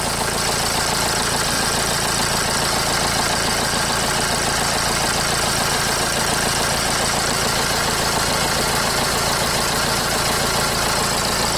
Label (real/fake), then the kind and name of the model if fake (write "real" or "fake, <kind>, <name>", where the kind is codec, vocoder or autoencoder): real